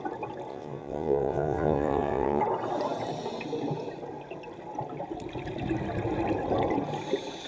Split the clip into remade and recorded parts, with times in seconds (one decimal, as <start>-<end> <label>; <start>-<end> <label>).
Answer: 0.0-0.5 recorded; 0.5-2.4 remade; 2.4-7.5 recorded